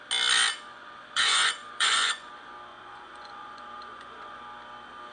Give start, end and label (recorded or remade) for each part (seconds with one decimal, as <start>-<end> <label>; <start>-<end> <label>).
0.0-0.7 recorded; 0.7-2.3 remade; 2.3-2.7 recorded; 2.7-4.4 remade; 4.4-5.1 recorded